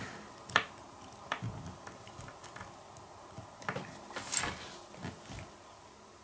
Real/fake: real